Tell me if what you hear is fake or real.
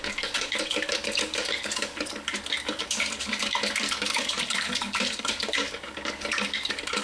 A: fake